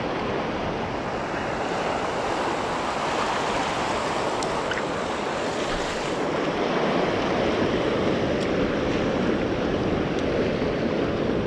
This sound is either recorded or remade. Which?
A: recorded